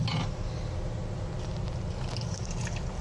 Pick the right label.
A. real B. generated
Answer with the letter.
A